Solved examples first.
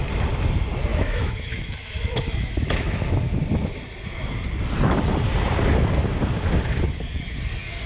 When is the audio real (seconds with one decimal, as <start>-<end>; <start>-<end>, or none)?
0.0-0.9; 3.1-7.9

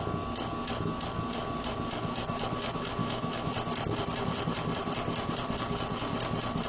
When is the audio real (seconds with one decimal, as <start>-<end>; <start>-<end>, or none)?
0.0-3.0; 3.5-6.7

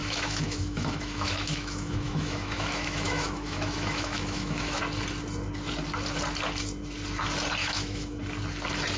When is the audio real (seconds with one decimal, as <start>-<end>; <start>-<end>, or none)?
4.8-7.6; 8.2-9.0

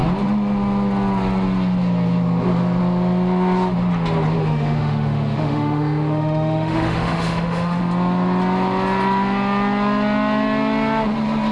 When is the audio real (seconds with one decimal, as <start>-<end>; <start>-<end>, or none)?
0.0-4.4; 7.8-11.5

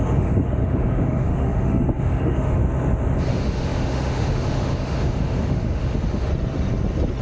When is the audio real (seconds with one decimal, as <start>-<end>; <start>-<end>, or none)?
2.6-3.3; 6.3-7.2